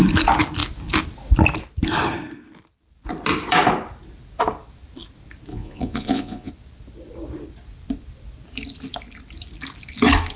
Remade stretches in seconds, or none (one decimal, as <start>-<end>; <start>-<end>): 5.5-6.5